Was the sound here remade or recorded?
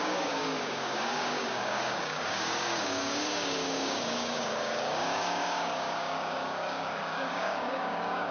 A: remade